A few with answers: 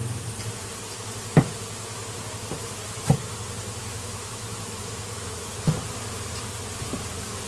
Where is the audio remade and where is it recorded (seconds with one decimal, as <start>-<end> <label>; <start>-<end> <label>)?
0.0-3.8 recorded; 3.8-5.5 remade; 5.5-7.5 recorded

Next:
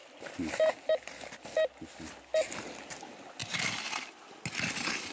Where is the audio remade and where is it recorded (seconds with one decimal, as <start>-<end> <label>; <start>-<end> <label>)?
0.0-5.1 recorded

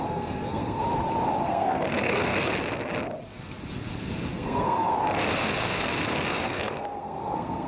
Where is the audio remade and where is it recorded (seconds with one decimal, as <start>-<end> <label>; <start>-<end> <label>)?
0.0-0.8 remade; 0.8-1.4 recorded; 1.4-2.5 remade; 2.5-4.3 recorded; 4.3-4.9 remade; 4.9-5.6 recorded; 5.6-7.7 remade